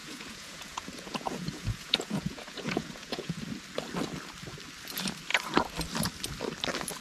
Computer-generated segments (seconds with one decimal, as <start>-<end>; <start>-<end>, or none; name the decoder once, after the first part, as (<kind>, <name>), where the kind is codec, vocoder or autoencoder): 0.0-3.4 (vocoder, Vocos)